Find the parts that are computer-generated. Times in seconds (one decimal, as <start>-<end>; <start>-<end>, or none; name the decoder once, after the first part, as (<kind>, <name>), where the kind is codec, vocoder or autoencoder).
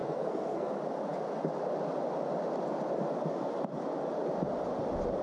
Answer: 0.0-0.7 (codec, SNAC)